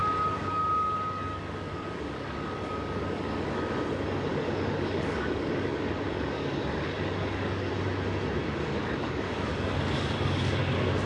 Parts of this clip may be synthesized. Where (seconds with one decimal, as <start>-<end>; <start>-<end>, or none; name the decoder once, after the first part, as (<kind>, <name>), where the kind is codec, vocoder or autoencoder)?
0.0-3.8 (codec, DAC); 4.3-7.7; 8.4-10.7

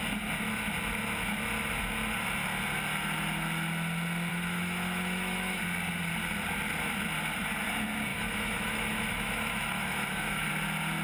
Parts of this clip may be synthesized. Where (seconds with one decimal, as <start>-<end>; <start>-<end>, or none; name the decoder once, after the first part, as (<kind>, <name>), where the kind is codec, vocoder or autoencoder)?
4.3-5.6 (autoencoder, DAC-VAE); 8.1-10.5

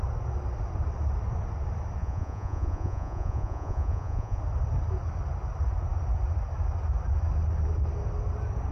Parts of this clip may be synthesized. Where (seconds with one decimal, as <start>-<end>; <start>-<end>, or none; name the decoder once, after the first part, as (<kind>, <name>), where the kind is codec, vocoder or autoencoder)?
2.0-4.4 (vocoder, Vocos)

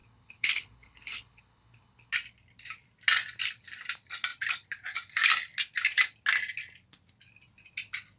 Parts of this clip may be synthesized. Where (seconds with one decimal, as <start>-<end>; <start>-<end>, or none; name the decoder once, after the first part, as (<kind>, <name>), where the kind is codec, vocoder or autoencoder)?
0.0-2.1 (codec, HILCodec)

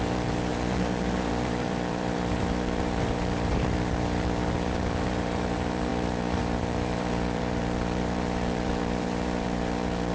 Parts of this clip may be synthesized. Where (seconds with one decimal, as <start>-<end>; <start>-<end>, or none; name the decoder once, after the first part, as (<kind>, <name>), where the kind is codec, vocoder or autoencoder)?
0.0-10.1 (vocoder, BigVGAN v2)

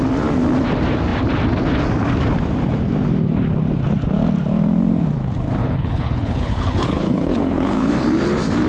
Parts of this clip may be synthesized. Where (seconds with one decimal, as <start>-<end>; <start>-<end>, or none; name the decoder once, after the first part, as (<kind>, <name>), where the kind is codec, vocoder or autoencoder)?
5.6-7.9 (codec, HILCodec)

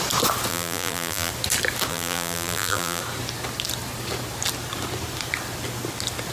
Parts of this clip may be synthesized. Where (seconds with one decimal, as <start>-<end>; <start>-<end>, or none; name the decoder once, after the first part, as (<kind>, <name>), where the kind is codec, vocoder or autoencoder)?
0.5-1.3 (vocoder, BigVGAN v2); 1.9-3.0